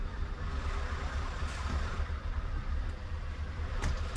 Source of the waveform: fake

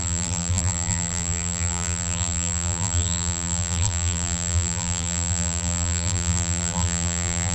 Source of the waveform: fake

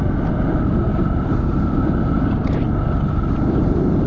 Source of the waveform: real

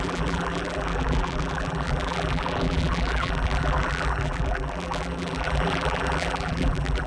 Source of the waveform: fake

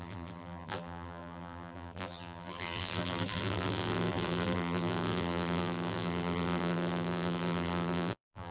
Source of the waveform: fake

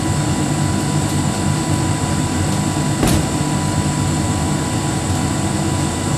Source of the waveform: real